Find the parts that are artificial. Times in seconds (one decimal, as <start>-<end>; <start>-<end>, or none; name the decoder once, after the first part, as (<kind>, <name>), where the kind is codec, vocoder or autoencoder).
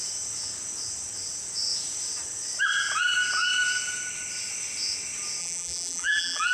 5.4-6.5 (vocoder, BigVGAN v2)